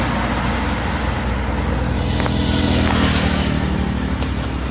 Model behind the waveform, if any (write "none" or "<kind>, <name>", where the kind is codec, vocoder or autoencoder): none